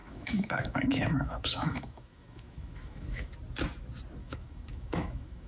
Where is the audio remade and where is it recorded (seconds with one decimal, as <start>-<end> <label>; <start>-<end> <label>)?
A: 0.0-3.3 remade; 3.3-4.2 recorded; 4.2-5.5 remade